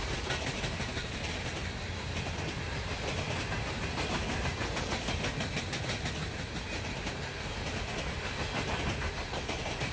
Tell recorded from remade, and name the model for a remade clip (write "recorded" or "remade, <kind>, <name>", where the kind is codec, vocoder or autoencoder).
recorded